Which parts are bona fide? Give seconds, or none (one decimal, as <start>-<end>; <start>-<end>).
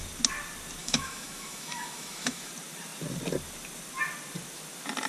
0.0-0.8; 2.5-5.1